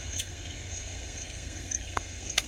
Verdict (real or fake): fake